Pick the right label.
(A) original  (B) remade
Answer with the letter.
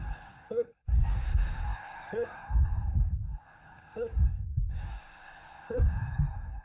B